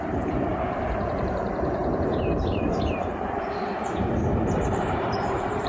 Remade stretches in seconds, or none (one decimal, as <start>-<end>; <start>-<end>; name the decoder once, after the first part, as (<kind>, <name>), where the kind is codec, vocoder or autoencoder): 0.0-5.7 (vocoder, BigVGAN v2)